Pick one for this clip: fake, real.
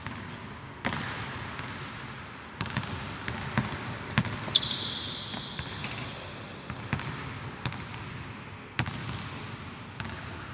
real